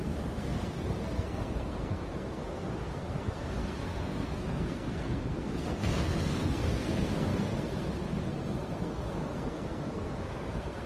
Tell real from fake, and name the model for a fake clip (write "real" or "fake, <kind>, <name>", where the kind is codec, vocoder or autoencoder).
fake, codec, SNAC